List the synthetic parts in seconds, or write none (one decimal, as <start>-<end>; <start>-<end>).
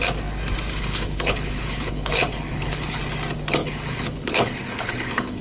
0.7-3.0; 3.6-5.4